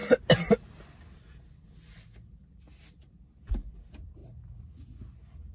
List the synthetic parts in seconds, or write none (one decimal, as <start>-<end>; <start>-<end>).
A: none